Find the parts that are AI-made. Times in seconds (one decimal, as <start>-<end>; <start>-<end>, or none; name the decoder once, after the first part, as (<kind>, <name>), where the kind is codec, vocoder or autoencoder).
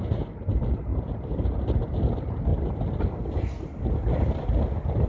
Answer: 0.9-1.8 (vocoder, BigVGAN v2)